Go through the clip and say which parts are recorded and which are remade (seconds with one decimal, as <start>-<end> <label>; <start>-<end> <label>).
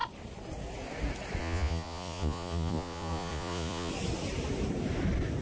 0.0-1.4 recorded; 1.4-3.9 remade; 3.9-5.4 recorded